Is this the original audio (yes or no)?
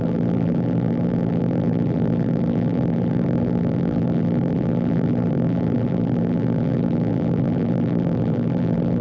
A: no